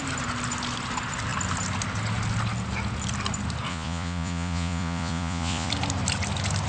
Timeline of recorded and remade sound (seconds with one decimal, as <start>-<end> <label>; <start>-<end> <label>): 0.0-3.7 recorded; 3.7-5.7 remade; 5.7-6.7 recorded